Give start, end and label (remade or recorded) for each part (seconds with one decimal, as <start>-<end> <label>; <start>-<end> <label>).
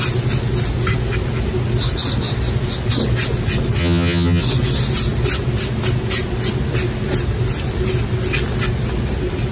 0.0-3.8 recorded; 3.8-4.4 remade; 4.4-9.5 recorded